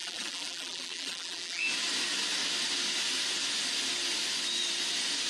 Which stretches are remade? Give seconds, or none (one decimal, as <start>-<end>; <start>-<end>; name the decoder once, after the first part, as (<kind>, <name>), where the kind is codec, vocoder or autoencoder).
0.0-1.6 (vocoder, BigVGAN v2)